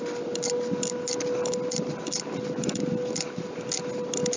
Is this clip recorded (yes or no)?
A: yes